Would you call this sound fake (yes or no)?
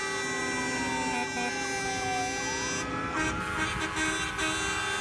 no